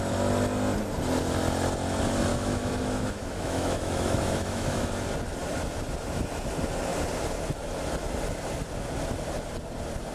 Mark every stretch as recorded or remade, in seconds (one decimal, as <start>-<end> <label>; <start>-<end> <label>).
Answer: 0.0-2.3 recorded; 2.3-4.9 remade; 4.9-10.1 recorded